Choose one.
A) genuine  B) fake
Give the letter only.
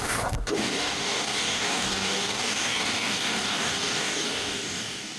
B